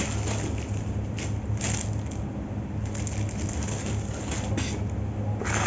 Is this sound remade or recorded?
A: recorded